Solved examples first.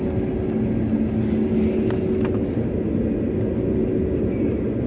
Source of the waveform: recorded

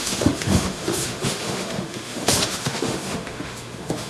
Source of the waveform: remade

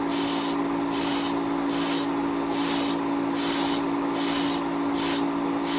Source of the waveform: recorded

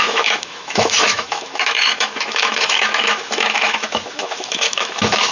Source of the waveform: remade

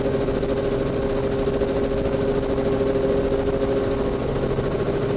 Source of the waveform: recorded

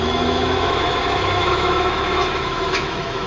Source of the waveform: remade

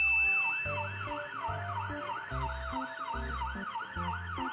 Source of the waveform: recorded